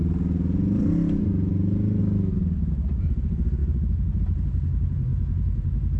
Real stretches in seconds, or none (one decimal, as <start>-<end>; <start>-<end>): 0.0-6.0